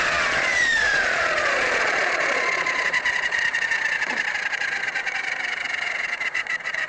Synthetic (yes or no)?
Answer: yes